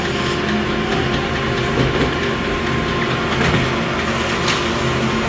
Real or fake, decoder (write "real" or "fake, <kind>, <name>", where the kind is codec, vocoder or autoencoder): real